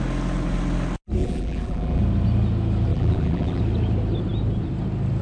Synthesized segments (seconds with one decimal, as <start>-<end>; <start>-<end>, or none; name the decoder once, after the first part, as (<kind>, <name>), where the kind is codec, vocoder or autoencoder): 1.2-2.0 (vocoder, BigVGAN v2); 2.9-3.6